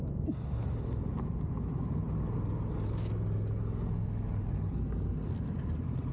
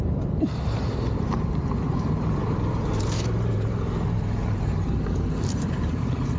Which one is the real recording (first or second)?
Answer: first